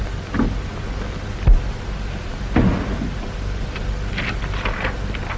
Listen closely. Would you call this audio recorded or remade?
recorded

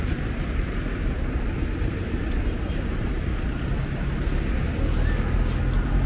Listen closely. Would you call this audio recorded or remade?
recorded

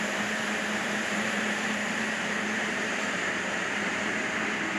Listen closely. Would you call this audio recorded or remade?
remade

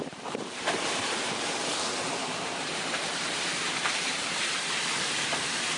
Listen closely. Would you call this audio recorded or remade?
remade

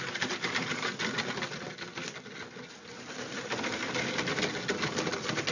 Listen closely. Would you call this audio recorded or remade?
recorded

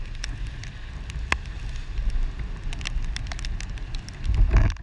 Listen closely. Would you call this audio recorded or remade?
recorded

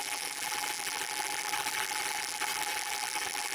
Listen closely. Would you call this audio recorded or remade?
remade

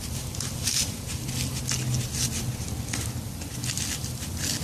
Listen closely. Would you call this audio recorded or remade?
recorded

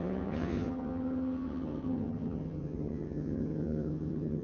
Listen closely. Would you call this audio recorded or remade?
remade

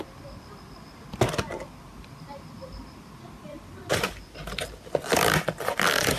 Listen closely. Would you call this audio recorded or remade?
recorded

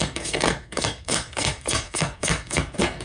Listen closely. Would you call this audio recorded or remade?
remade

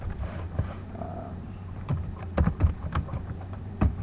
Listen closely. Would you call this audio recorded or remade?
remade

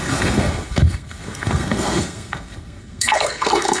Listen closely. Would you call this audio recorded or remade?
remade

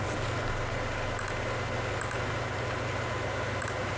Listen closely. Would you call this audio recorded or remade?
recorded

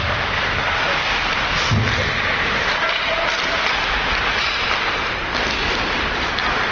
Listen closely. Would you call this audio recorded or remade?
recorded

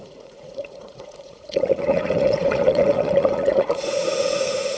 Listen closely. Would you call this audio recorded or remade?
remade